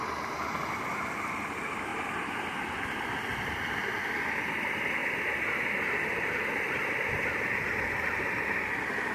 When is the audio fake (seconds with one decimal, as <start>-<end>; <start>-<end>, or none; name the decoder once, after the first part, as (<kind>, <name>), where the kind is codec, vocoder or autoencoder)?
none

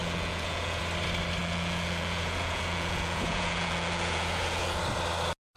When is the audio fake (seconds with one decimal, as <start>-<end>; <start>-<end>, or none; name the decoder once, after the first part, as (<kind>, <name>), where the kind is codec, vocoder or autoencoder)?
0.0-0.8 (vocoder, Vocos); 1.4-4.8

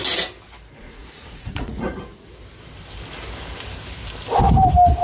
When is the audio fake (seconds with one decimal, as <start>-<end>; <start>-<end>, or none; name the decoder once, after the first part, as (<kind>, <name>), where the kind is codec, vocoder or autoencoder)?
0.8-2.0 (vocoder, Vocos)

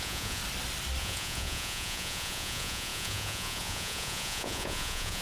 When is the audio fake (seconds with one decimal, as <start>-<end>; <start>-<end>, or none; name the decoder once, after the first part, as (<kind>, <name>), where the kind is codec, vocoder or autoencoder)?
0.0-0.4 (vocoder, Vocos); 1.0-5.2

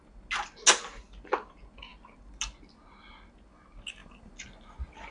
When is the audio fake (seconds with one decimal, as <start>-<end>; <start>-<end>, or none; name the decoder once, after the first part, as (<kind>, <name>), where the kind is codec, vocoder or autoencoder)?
none